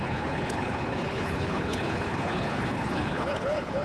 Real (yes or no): no